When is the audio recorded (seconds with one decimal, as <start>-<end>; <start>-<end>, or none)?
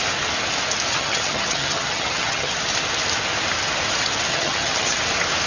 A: 0.0-0.9; 2.5-4.3; 5.0-5.5